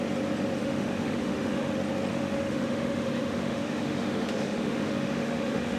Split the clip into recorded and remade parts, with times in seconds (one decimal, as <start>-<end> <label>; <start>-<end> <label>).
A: 0.0-0.6 recorded; 0.6-1.7 remade; 1.7-2.1 recorded; 2.1-5.8 remade